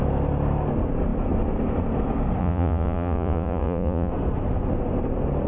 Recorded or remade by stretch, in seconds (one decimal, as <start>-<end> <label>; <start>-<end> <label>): 0.0-2.4 recorded; 2.4-4.1 remade; 4.1-5.5 recorded